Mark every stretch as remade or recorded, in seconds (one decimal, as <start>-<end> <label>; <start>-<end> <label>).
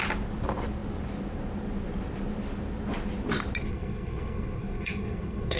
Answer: 0.0-3.6 recorded; 3.6-5.6 remade